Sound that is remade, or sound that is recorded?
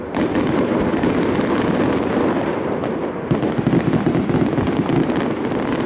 recorded